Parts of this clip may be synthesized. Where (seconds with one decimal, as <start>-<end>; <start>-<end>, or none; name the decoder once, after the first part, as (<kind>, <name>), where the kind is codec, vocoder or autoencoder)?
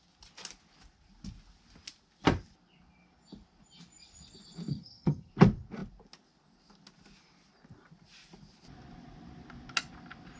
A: 4.7-5.3 (vocoder, HiFi-GAN)